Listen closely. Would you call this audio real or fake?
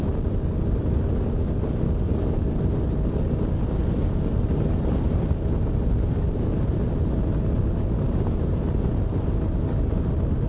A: real